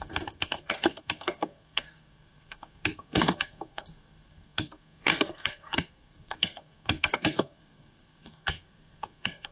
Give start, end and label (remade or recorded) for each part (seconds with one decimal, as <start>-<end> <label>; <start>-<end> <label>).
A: 0.0-9.5 remade